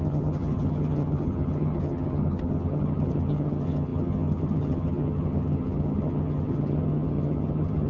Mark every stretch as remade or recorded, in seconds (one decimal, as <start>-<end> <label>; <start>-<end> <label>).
0.0-7.9 remade